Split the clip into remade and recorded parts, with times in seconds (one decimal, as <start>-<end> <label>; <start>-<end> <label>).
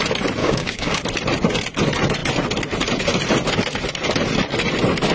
0.0-0.4 recorded; 0.4-1.0 remade; 1.0-5.1 recorded